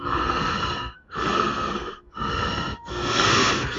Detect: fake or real fake